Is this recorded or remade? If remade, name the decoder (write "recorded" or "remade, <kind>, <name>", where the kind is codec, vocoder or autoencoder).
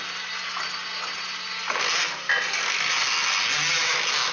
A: recorded